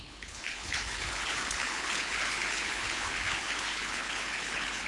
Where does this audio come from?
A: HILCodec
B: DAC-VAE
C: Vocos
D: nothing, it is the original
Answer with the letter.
A